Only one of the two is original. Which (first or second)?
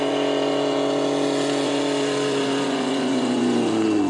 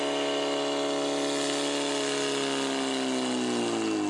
second